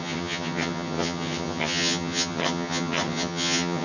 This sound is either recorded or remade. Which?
remade